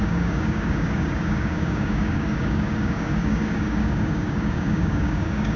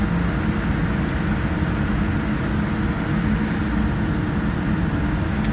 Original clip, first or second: second